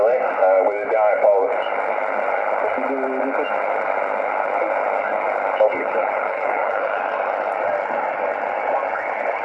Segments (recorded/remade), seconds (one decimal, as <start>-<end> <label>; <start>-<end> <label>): 0.0-5.8 recorded; 5.8-7.0 remade; 7.0-9.4 recorded